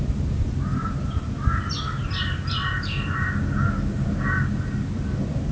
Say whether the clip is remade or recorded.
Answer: recorded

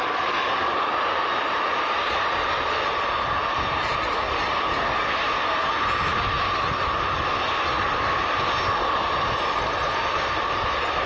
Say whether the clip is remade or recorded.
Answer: recorded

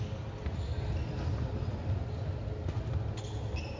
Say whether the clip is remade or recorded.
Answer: recorded